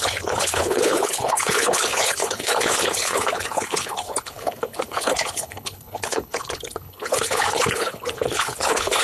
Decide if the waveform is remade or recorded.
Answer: remade